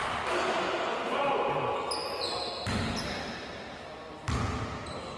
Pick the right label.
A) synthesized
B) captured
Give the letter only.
B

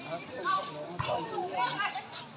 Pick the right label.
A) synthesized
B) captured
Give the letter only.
B